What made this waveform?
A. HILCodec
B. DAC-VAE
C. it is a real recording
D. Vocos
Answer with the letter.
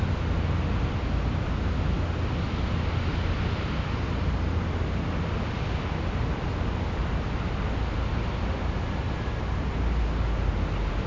C